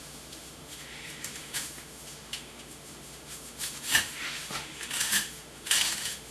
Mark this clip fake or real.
fake